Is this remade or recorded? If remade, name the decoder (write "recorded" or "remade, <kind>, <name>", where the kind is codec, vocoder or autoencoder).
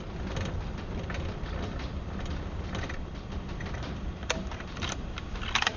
remade, vocoder, BigVGAN v2